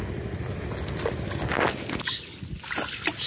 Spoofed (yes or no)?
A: no